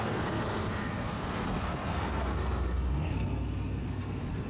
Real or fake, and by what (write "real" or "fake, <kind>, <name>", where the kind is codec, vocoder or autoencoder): fake, codec, SNAC